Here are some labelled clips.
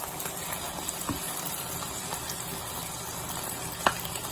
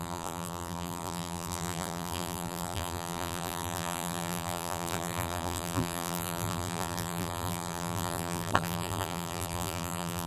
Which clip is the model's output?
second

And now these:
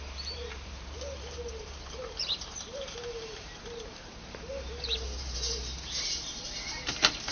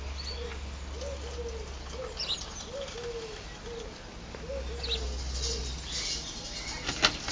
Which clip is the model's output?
first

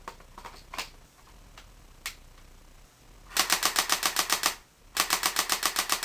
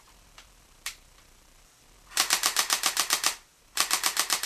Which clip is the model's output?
second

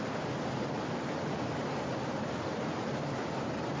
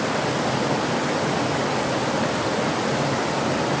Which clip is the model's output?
first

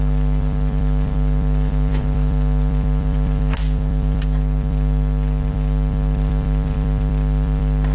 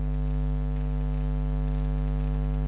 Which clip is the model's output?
first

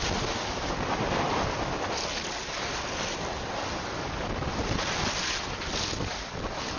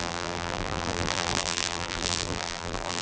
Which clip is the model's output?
second